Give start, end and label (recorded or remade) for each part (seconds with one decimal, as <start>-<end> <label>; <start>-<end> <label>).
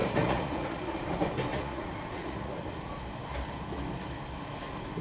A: 0.0-1.0 remade; 1.0-1.5 recorded; 1.5-2.9 remade; 2.9-5.0 recorded